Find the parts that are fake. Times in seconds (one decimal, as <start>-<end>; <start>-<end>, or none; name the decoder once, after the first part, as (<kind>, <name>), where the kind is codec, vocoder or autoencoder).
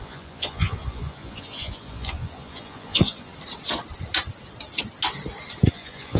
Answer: 0.0-3.3 (vocoder, Vocos); 5.7-6.2